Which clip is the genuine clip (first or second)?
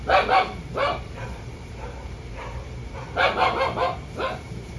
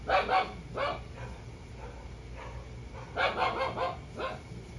second